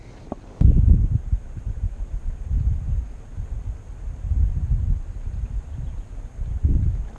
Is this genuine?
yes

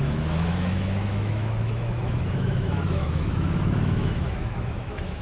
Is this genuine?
no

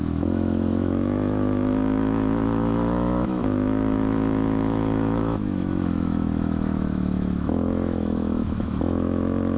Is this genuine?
no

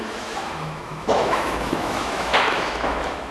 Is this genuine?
no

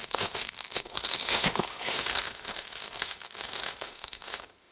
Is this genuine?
no